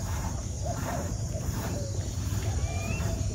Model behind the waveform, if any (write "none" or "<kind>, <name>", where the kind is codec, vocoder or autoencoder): vocoder, BigVGAN v2